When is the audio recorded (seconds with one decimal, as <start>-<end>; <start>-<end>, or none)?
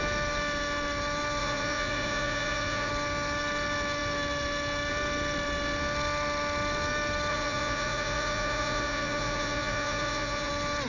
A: 0.0-1.4; 2.9-7.3; 10.5-10.9